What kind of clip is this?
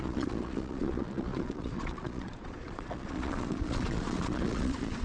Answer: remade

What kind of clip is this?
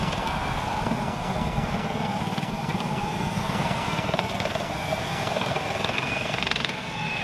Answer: remade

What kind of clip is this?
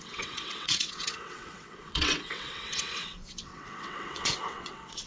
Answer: remade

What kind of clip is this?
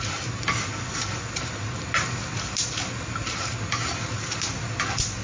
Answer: recorded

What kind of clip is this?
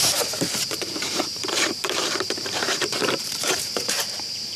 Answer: remade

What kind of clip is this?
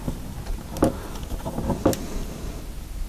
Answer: recorded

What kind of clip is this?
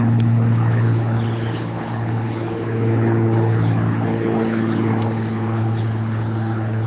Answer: remade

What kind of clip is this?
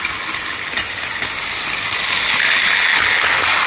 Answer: recorded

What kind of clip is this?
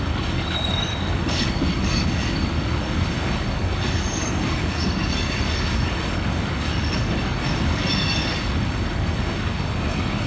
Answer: remade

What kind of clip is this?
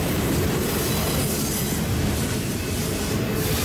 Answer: recorded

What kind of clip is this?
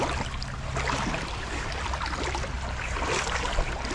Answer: recorded